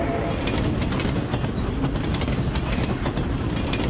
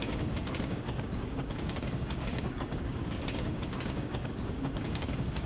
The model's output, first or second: second